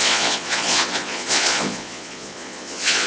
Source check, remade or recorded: remade